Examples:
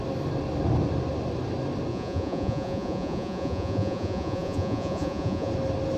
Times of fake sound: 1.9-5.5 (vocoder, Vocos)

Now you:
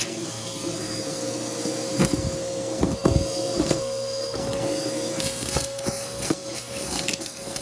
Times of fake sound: 0.0-7.6 (codec, SNAC)

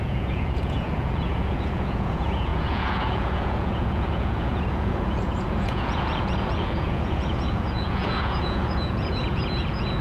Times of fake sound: 0.0-10.0 (vocoder, Vocos)

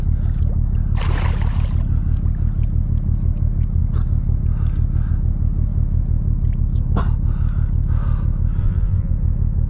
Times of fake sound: 8.6-9.1 (vocoder, BigVGAN v2)

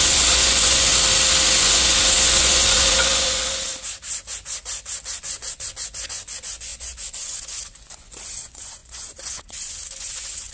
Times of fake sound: 0.0-0.9 (vocoder, Vocos); 1.6-3.7; 5.2-10.5

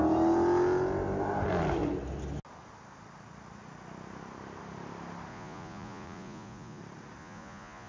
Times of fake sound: 5.3-6.8 (vocoder, Vocos); 7.2-7.9

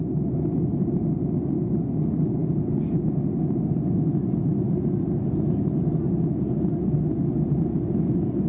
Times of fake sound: none